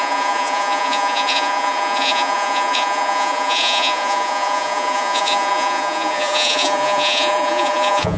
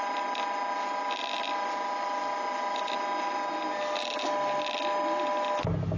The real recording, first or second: second